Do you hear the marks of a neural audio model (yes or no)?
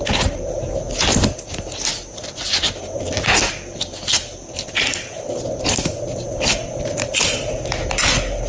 no